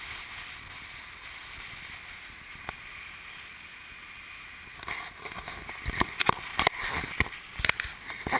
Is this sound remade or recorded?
recorded